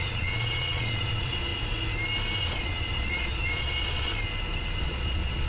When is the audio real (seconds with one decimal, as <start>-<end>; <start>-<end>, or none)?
1.5-2.4; 4.1-4.8